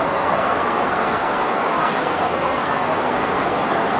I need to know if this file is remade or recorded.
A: remade